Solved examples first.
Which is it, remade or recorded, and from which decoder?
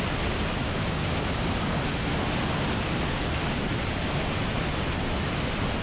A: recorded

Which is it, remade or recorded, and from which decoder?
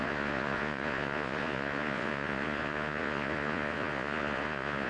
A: remade, vocoder, Vocos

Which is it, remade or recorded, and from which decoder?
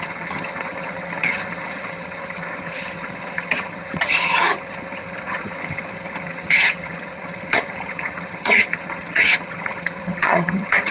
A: remade, vocoder, HiFi-GAN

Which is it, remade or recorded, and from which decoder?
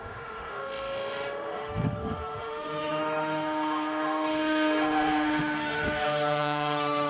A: remade, autoencoder, DAC-VAE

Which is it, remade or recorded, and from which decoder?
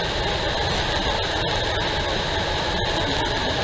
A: recorded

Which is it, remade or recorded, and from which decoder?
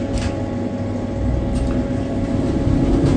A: recorded